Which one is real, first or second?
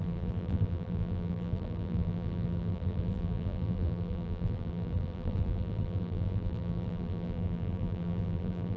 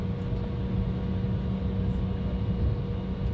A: second